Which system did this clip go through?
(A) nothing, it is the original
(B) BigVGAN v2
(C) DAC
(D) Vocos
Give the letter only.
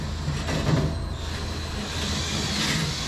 A